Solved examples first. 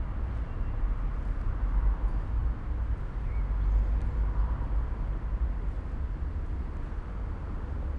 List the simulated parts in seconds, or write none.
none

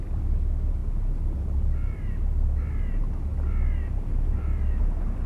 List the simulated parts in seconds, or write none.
none